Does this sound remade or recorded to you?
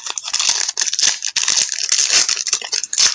recorded